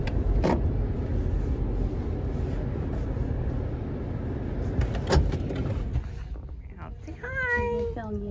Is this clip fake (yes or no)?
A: no